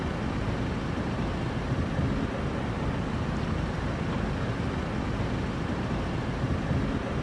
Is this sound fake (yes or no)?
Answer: no